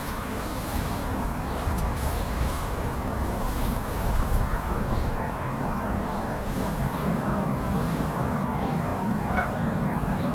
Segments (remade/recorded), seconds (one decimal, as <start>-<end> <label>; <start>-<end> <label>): 0.0-10.3 remade